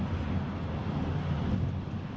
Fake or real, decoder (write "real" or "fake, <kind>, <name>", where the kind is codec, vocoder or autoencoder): real